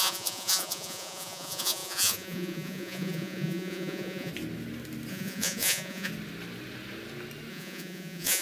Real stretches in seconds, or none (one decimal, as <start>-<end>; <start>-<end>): 4.3-5.1; 6.1-7.5